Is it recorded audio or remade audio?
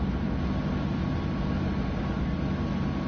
recorded